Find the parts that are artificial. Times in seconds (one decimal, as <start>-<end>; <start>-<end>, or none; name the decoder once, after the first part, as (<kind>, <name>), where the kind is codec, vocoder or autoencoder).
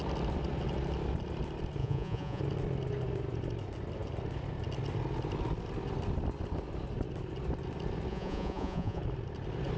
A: 1.8-2.4 (vocoder, Vocos); 8.1-9.0